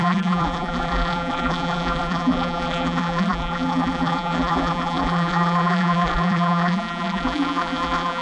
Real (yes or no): no